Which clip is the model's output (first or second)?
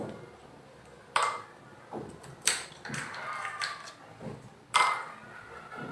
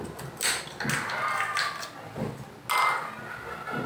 first